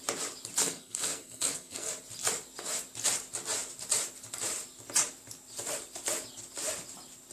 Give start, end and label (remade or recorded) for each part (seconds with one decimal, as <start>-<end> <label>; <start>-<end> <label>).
0.0-0.6 recorded; 0.6-1.9 remade; 1.9-7.3 recorded